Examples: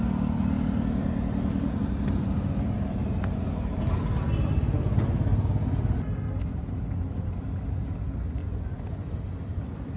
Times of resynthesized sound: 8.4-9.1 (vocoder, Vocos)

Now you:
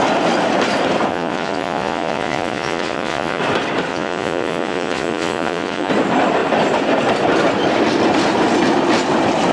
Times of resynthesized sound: 1.1-3.4 (vocoder, Vocos); 3.9-5.9